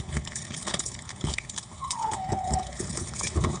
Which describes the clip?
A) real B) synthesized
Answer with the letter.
B